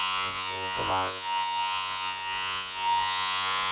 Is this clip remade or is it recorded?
remade